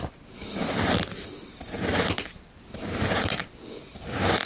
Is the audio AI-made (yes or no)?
no